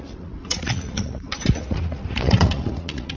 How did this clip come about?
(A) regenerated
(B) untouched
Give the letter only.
A